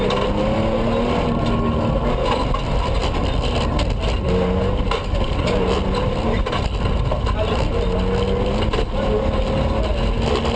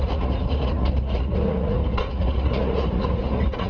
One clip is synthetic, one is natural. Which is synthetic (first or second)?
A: second